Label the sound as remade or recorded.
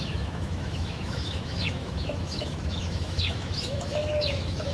remade